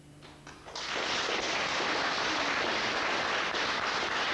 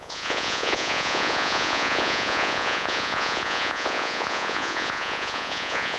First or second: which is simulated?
second